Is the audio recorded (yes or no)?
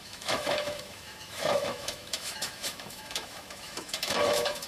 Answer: no